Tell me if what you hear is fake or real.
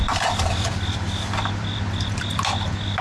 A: fake